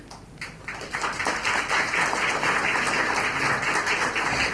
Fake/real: real